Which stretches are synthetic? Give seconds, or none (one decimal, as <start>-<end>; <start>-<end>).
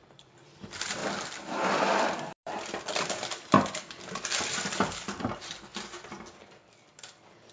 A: 0.0-5.7; 6.7-7.5